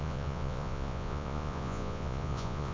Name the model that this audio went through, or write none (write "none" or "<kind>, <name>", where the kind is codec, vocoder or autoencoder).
vocoder, Vocos